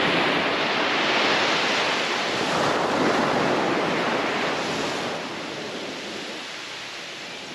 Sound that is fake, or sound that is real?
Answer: real